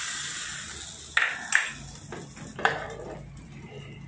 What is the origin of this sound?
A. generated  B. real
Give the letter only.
B